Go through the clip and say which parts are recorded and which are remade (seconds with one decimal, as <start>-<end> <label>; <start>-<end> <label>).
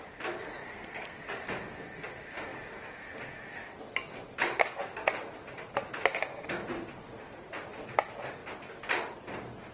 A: 0.0-0.6 recorded; 0.6-1.2 remade; 1.2-9.7 recorded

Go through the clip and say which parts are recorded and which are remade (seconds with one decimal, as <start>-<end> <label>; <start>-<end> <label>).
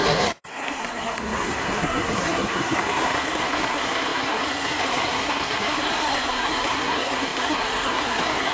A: 0.0-8.5 remade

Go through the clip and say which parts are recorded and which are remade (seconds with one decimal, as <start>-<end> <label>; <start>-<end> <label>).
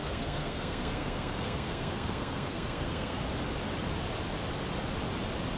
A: 0.0-3.2 remade; 3.2-5.6 recorded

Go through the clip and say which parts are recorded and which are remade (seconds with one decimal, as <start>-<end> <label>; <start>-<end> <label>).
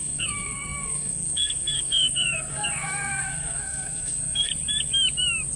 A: 0.0-4.5 remade; 4.5-5.6 recorded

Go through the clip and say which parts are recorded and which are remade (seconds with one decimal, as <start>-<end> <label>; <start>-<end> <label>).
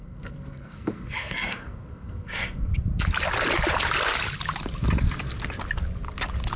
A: 0.0-2.7 remade; 2.7-6.6 recorded